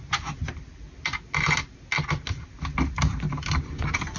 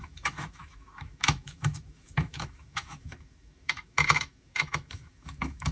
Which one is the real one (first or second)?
first